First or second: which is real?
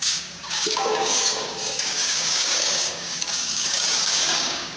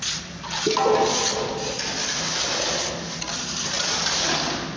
second